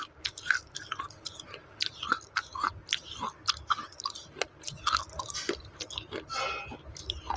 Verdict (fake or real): real